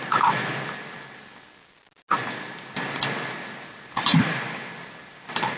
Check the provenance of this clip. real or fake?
real